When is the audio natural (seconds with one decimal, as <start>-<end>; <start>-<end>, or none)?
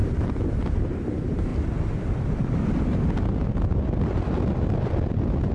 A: 0.0-5.5